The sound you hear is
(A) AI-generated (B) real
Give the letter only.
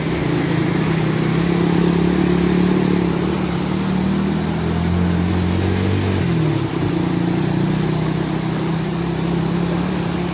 B